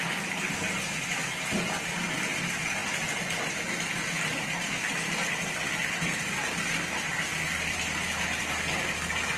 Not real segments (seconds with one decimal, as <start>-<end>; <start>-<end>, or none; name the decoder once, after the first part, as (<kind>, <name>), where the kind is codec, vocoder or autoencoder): 4.3-8.4 (vocoder, BigVGAN v2)